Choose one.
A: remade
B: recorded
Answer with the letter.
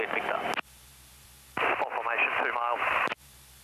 B